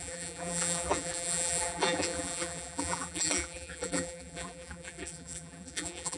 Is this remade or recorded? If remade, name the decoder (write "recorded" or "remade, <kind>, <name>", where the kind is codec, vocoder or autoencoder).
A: remade, vocoder, BigVGAN v2